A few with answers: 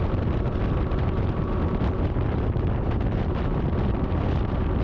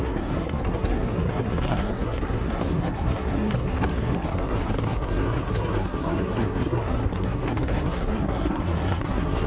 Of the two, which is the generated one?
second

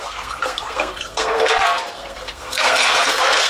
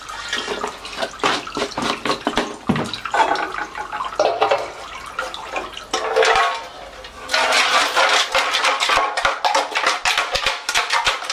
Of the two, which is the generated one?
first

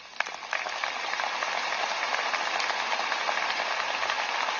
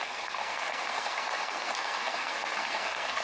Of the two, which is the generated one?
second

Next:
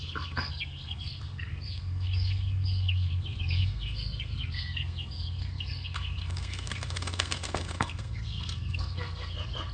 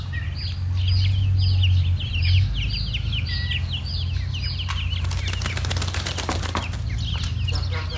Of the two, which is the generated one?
first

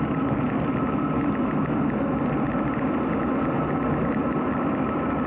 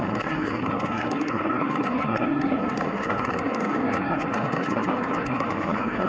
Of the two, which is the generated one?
second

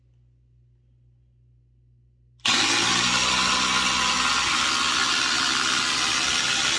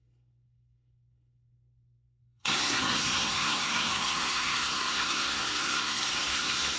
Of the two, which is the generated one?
second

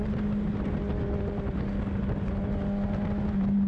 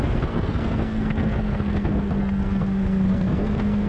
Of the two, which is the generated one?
second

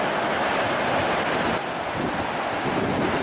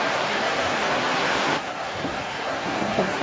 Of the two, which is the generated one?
second